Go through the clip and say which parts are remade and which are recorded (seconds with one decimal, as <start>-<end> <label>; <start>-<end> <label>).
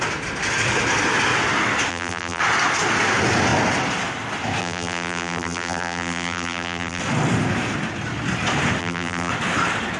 0.0-1.9 recorded; 1.9-2.4 remade; 2.4-4.6 recorded; 4.6-7.0 remade; 7.0-8.8 recorded; 8.8-9.3 remade; 9.3-10.0 recorded